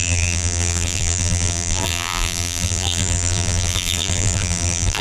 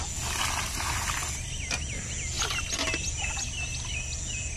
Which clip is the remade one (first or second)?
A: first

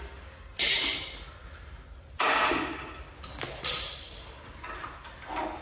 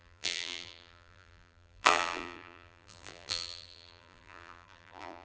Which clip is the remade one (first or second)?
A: second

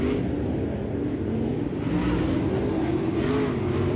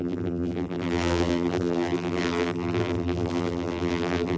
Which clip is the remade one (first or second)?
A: second